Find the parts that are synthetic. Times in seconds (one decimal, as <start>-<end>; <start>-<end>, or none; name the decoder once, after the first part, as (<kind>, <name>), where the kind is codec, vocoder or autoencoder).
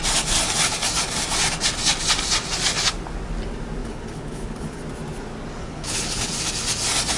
3.8-4.8 (codec, HILCodec); 5.6-6.3